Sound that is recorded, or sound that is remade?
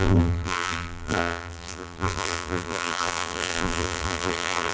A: remade